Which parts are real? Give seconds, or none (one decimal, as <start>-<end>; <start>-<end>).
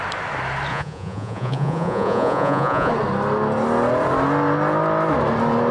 0.0-0.7; 2.9-5.7